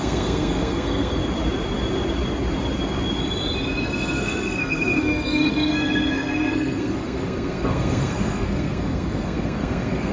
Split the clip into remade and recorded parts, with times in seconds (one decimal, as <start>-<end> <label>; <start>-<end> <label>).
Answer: 0.0-1.2 remade; 1.2-3.8 recorded; 3.8-10.1 remade